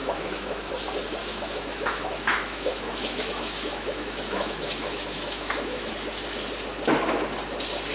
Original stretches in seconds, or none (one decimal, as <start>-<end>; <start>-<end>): 0.7-1.2; 5.9-7.9